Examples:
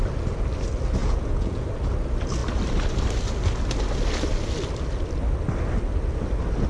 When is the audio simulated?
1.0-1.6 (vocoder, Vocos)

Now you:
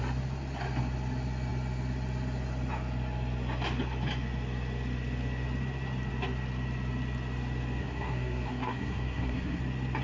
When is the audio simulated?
7.8-9.6 (codec, SNAC)

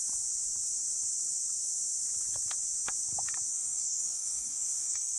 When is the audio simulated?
3.5-5.2 (codec, DAC)

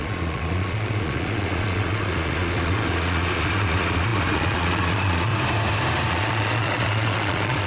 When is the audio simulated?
0.0-5.3 (vocoder, Vocos); 6.1-7.7

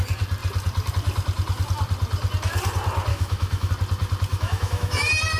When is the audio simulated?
3.1-3.7 (autoencoder, DAC-VAE); 4.3-5.0